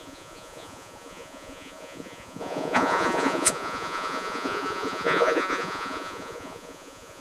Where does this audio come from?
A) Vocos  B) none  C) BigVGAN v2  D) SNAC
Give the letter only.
A